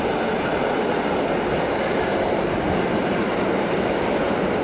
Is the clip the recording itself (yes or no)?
yes